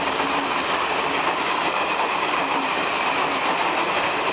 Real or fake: real